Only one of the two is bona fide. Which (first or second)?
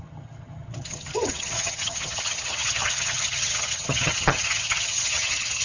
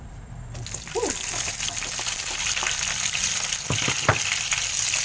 second